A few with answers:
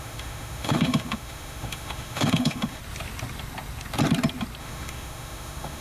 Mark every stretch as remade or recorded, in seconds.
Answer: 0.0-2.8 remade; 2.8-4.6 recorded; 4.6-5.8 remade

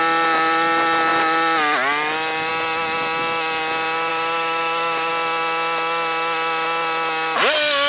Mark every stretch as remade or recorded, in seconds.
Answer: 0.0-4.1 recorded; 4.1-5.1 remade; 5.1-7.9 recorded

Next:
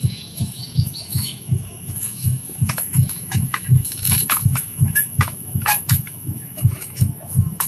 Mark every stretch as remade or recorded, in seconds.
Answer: 0.0-7.7 remade